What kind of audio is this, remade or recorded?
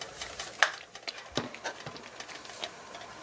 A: recorded